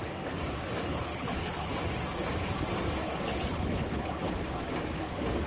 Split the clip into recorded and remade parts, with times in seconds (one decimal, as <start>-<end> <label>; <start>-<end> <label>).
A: 0.0-0.9 recorded; 0.9-1.7 remade; 1.7-3.0 recorded; 3.0-4.3 remade; 4.3-5.5 recorded